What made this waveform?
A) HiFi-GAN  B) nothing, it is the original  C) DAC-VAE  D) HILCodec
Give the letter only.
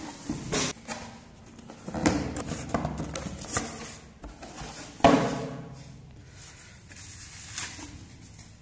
B